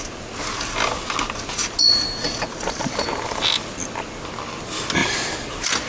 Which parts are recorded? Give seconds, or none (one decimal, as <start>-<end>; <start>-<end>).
0.0-5.9